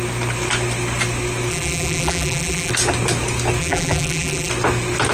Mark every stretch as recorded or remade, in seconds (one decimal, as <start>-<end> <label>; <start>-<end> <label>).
0.0-1.5 recorded; 1.5-2.7 remade; 2.7-3.6 recorded; 3.6-4.5 remade; 4.5-5.1 recorded